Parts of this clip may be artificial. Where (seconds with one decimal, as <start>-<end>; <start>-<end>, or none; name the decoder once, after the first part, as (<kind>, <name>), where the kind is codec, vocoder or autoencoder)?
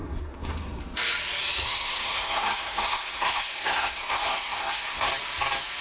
0.0-0.8 (codec, SNAC); 1.6-5.1